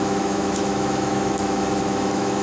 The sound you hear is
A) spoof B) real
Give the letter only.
A